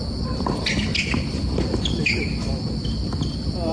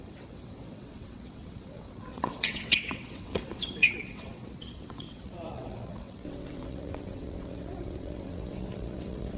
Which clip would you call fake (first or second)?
second